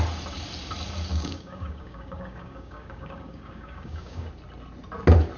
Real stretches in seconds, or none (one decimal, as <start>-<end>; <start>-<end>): 0.0-1.1; 4.3-5.4